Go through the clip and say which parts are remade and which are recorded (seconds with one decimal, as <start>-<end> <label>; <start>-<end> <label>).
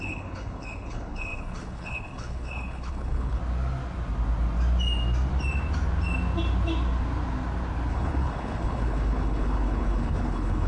0.0-3.4 remade; 3.4-7.9 recorded; 7.9-10.7 remade